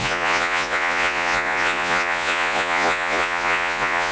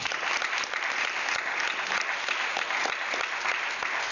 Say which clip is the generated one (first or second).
first